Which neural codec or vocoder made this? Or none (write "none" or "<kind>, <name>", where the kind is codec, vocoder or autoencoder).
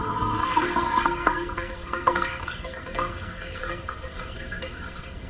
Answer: codec, SNAC